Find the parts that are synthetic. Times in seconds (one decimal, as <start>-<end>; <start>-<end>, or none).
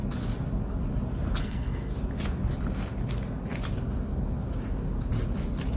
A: 1.4-1.9